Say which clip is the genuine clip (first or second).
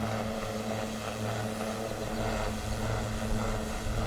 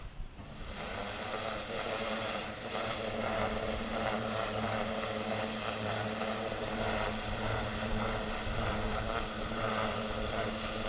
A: first